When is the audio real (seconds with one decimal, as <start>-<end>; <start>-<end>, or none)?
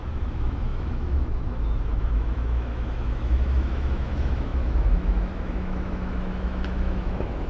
none